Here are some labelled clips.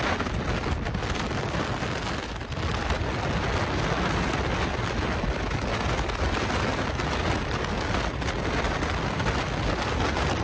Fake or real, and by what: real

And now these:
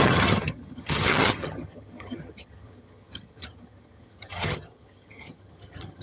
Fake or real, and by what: fake, vocoder, HiFi-GAN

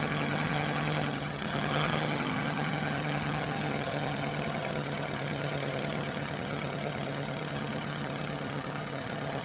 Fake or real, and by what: fake, vocoder, HiFi-GAN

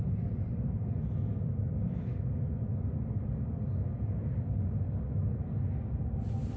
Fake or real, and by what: real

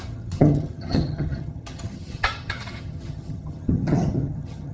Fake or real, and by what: fake, vocoder, HiFi-GAN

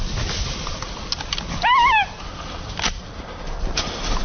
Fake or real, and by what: real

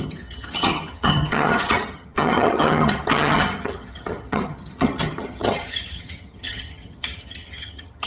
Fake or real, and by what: fake, vocoder, HiFi-GAN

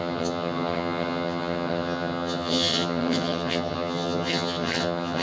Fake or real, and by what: fake, vocoder, HiFi-GAN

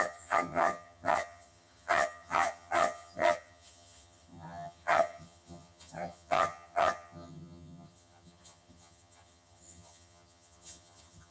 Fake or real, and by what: fake, vocoder, HiFi-GAN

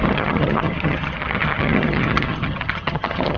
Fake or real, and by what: fake, vocoder, HiFi-GAN